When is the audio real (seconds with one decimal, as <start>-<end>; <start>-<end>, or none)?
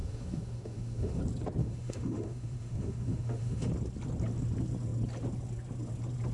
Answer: 1.2-1.6; 3.7-6.3